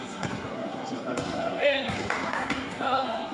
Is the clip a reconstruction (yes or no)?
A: yes